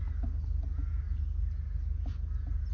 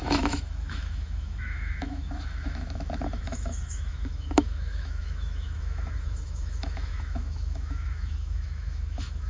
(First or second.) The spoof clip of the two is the second